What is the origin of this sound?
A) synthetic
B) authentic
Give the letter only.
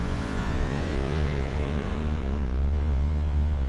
A